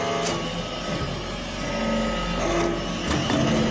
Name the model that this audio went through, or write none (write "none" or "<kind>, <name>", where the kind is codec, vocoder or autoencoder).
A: none